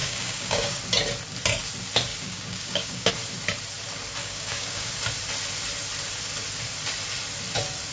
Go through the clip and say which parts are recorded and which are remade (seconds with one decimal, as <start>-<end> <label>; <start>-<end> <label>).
0.0-0.8 remade; 0.8-2.1 recorded; 2.1-3.1 remade; 3.1-4.2 recorded; 4.2-4.9 remade; 4.9-7.9 recorded